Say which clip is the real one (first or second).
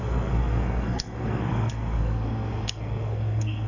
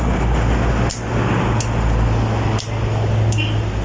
second